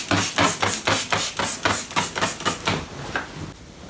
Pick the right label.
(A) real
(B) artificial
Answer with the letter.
A